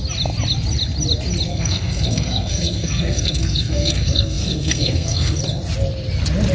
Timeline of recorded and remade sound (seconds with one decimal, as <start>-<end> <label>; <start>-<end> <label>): 0.0-1.5 recorded; 1.5-5.4 remade; 5.4-6.5 recorded